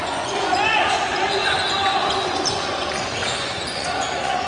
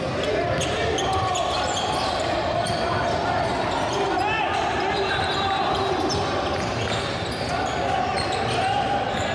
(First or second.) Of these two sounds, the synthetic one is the first